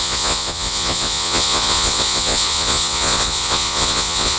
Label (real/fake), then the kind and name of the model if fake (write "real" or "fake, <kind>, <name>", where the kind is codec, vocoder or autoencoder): fake, vocoder, Vocos